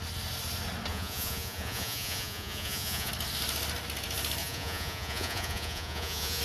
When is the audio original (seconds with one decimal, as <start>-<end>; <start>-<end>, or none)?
0.0-0.9; 3.1-4.4